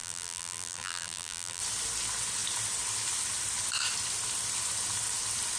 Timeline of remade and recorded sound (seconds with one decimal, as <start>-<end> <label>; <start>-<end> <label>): 0.0-1.6 remade; 1.6-5.6 recorded